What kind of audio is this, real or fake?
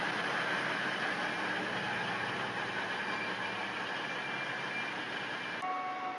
real